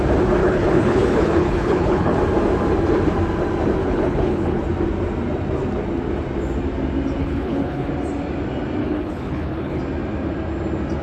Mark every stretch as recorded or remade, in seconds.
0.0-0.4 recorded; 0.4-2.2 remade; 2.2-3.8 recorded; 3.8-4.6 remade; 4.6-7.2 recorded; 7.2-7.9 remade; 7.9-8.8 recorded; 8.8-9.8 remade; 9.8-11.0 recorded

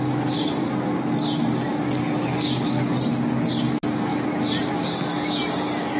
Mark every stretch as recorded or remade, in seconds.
0.0-6.0 recorded

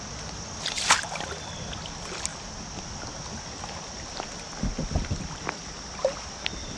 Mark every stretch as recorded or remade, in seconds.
0.0-6.8 recorded